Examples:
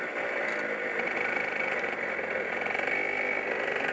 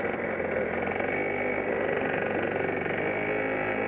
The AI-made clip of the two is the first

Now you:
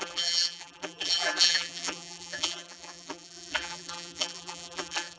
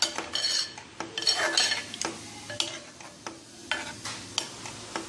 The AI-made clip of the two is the first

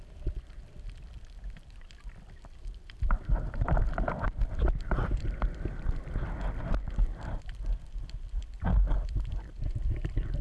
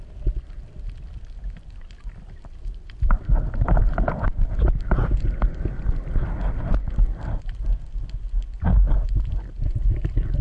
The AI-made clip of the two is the first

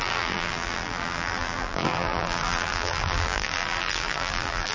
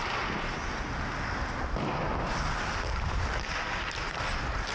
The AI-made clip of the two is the first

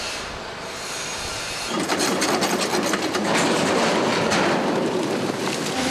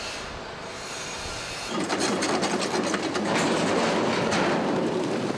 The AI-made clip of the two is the first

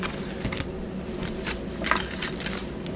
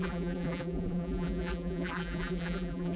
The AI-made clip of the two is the second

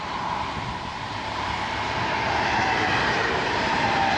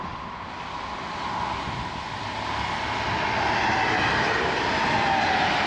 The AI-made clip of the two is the first